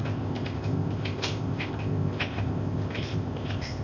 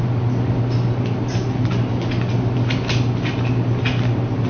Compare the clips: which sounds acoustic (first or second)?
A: second